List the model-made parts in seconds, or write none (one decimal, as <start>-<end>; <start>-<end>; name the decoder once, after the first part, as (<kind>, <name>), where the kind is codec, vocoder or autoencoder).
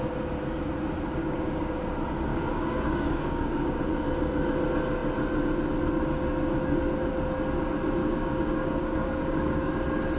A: 1.2-1.8 (codec, DAC); 2.3-3.8; 8.0-9.7